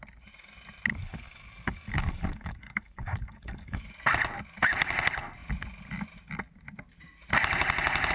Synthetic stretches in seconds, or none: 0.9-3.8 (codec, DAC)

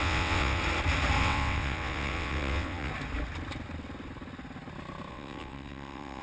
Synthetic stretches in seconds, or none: 0.0-0.6 (vocoder, WaveNeXt); 1.2-2.9; 5.1-6.2